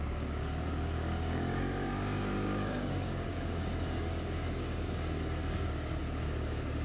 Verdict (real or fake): fake